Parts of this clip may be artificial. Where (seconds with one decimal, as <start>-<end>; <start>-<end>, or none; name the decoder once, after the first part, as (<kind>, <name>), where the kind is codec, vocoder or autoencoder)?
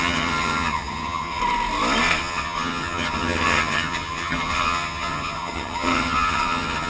0.0-1.4 (vocoder, HiFi-GAN); 2.2-6.9